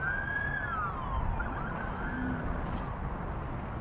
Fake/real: real